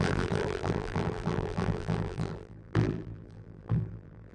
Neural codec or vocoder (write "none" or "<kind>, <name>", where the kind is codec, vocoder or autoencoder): vocoder, BigVGAN v2